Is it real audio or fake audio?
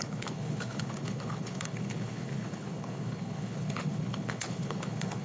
fake